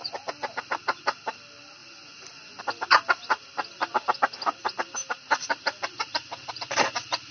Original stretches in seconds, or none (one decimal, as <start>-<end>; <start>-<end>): 0.0-1.8; 2.6-7.3